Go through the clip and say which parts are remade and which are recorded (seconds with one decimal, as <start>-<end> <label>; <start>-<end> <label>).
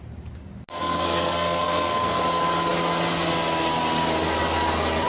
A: 0.0-0.8 recorded; 0.8-2.2 remade; 2.2-5.1 recorded